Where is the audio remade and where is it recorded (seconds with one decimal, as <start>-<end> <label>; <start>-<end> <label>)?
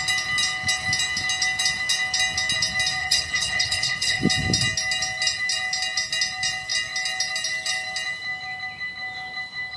0.0-3.0 recorded; 3.0-4.2 remade; 4.2-9.8 recorded